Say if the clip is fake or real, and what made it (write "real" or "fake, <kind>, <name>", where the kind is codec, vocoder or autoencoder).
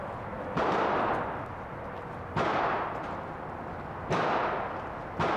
real